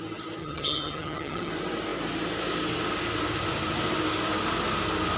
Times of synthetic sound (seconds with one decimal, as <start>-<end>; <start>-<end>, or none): 0.4-1.5